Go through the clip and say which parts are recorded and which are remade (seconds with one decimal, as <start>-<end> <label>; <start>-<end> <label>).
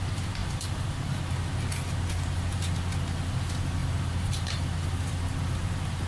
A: 0.0-0.4 recorded; 0.4-1.5 remade; 1.5-3.8 recorded; 3.8-5.0 remade; 5.0-6.1 recorded